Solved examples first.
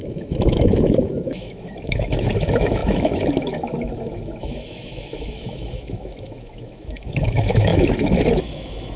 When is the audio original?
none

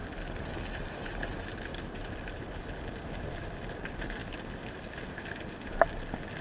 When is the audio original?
0.0-6.4

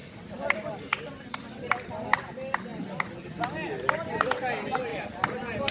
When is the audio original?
0.0-5.7